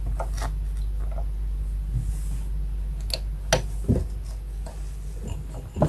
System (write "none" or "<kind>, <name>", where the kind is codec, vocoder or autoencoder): none